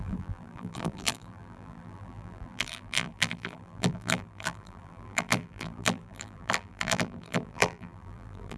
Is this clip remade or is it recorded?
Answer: remade